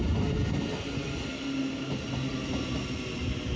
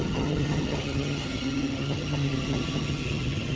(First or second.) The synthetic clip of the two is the second